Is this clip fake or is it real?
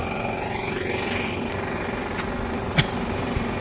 real